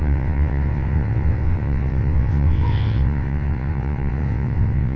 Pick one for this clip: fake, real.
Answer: fake